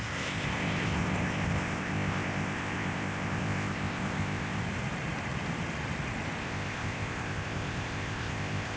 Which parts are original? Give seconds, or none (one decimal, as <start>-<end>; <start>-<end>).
4.6-6.4